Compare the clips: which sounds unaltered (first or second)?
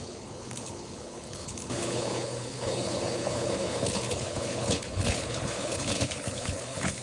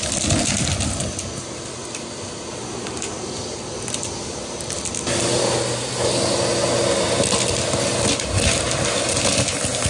second